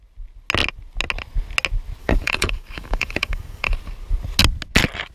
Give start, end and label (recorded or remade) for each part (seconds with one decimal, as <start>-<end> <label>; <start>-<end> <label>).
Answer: 0.0-2.0 recorded; 2.0-3.7 remade; 3.7-5.1 recorded